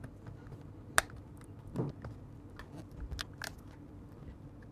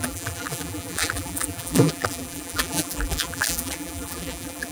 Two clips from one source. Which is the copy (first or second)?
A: second